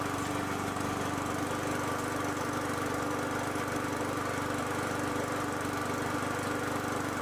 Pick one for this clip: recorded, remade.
recorded